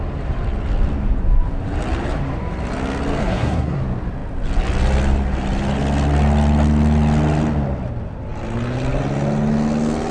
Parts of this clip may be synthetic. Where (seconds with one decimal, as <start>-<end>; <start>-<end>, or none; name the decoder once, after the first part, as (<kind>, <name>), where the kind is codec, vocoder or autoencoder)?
3.2-3.8 (codec, SNAC)